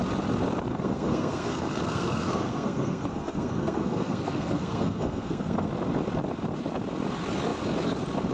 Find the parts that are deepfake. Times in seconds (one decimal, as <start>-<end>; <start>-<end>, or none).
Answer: 0.7-5.7